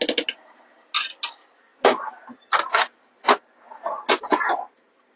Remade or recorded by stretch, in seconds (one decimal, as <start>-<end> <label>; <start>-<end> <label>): 0.0-5.2 recorded